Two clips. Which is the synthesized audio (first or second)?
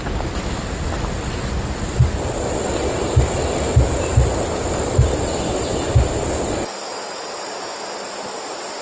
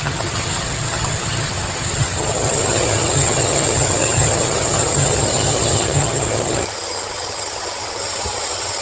second